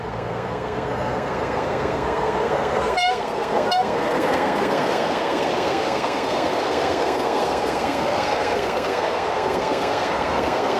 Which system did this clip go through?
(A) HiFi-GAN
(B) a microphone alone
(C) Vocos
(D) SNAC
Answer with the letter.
D